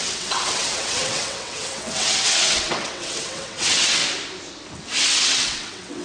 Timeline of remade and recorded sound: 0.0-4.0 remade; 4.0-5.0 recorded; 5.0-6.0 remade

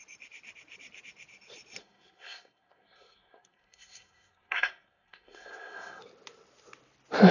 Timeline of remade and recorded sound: 0.0-1.8 recorded; 1.8-6.0 remade; 6.0-7.3 recorded

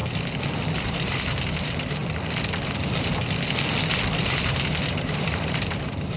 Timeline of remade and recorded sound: 0.0-0.8 recorded; 0.8-2.0 remade; 2.0-4.2 recorded; 4.2-6.2 remade

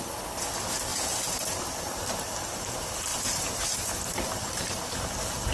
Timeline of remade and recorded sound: 0.0-0.9 recorded; 0.9-2.1 remade; 2.1-3.1 recorded; 3.1-5.1 remade; 5.1-5.5 recorded

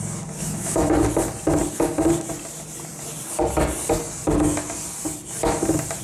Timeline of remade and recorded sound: 0.0-0.4 recorded; 0.4-0.9 remade; 0.9-6.0 recorded